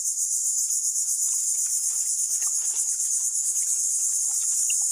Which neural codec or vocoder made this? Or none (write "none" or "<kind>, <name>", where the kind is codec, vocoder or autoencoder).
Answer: none